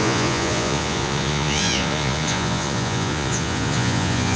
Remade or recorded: remade